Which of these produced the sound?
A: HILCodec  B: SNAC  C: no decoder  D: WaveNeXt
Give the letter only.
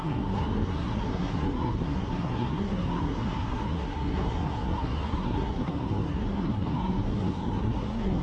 B